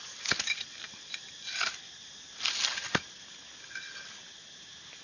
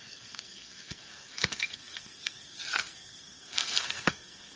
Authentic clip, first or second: first